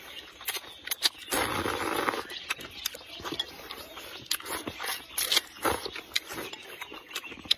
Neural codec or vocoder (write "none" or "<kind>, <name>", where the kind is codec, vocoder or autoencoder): none